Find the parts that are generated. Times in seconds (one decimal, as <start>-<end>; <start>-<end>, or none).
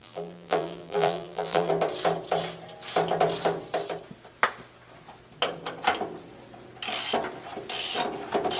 0.0-1.7